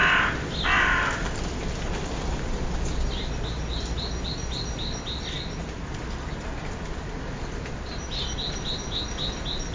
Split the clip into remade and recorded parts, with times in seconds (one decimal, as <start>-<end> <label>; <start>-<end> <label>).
0.0-9.7 recorded